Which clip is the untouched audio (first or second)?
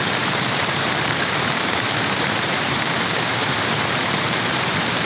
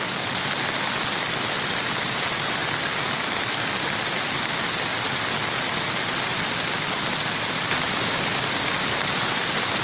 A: second